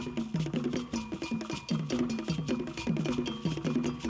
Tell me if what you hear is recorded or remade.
recorded